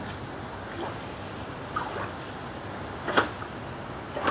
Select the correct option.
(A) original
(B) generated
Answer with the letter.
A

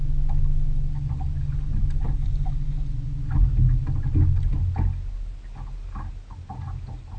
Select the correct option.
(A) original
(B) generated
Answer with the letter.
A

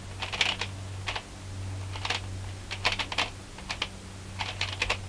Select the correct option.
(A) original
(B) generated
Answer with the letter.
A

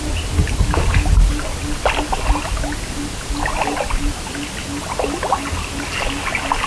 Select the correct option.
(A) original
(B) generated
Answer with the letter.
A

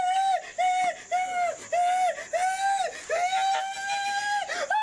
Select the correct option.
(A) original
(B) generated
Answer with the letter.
A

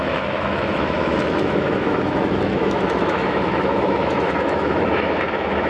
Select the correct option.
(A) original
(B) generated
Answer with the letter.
B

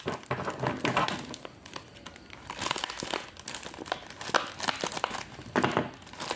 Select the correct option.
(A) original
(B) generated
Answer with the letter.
A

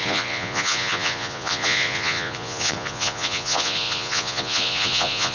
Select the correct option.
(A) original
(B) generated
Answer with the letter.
B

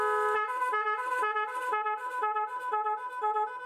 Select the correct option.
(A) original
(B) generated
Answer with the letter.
A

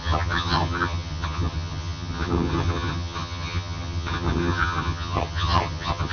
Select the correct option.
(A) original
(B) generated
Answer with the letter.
B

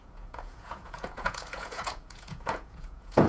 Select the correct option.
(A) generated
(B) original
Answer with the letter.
A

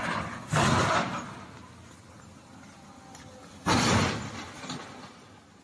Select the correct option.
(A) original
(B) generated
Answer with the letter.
A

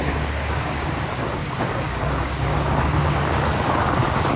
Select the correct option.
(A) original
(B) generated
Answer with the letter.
B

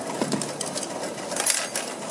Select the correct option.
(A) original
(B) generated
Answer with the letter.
A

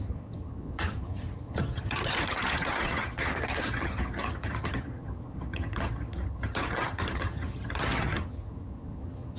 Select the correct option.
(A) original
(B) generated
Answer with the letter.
B